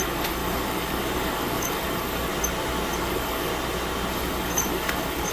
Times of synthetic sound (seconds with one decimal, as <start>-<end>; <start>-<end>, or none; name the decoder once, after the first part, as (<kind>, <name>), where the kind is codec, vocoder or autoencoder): 0.0-2.3 (codec, DAC); 3.0-3.5; 4.1-5.3